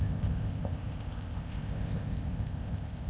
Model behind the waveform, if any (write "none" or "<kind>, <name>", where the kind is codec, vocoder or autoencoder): codec, ZipCodec